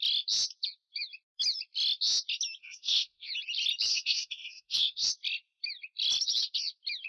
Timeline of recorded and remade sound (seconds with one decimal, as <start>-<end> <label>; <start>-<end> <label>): 0.0-2.6 recorded; 2.6-3.3 remade; 3.3-3.9 recorded; 3.9-5.1 remade; 5.1-7.1 recorded